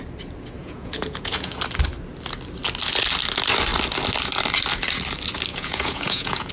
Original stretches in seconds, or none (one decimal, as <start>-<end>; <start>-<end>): 0.0-0.6; 1.6-5.5